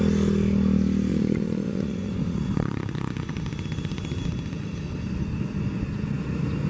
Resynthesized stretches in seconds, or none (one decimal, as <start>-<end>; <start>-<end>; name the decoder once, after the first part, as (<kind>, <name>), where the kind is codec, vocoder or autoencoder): 1.1-3.3 (vocoder, Vocos)